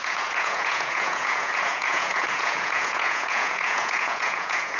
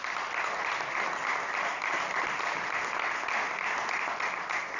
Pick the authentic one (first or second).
second